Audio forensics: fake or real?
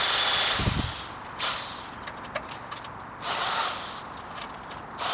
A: real